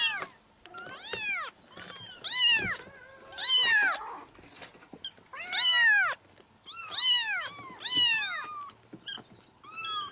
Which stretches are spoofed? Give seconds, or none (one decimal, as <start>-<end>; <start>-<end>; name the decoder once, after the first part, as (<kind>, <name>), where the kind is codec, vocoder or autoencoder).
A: none